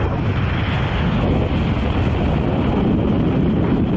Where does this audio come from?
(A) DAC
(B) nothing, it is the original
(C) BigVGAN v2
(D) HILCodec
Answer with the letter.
B